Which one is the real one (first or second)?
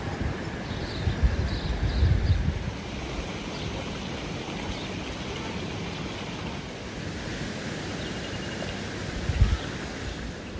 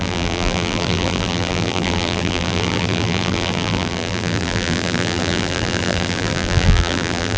first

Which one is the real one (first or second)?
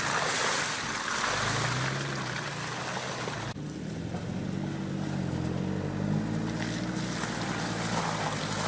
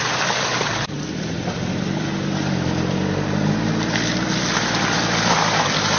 first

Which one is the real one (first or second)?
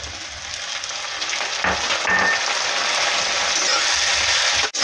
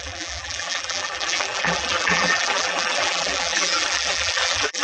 first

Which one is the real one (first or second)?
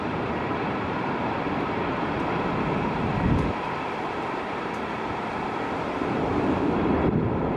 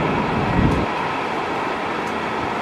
second